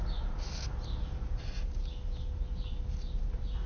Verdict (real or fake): real